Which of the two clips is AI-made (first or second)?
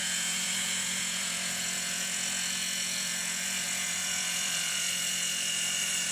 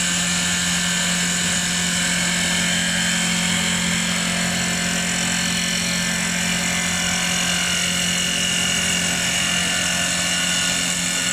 first